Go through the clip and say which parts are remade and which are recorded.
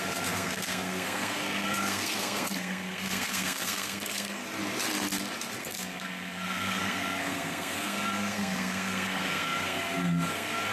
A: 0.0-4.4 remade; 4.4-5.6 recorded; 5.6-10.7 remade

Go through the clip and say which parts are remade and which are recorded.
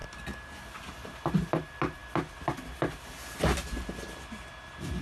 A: 0.0-5.0 recorded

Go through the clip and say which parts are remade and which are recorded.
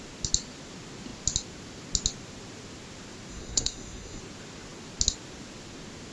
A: 0.0-3.3 recorded; 3.3-4.2 remade; 4.2-6.1 recorded